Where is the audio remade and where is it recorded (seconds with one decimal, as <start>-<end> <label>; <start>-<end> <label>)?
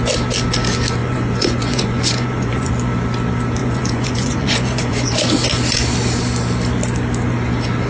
0.0-1.0 recorded; 1.0-2.7 remade; 2.7-3.6 recorded; 3.6-5.1 remade; 5.1-7.9 recorded